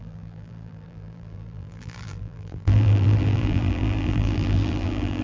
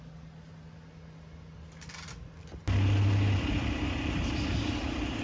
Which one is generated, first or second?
first